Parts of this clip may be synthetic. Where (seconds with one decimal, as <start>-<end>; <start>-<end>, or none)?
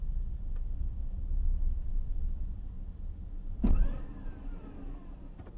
none